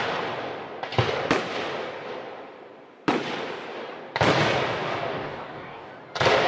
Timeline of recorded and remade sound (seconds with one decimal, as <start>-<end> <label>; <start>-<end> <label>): 0.0-5.1 recorded; 5.1-5.9 remade; 5.9-6.5 recorded